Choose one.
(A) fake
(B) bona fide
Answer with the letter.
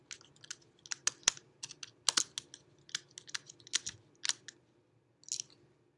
B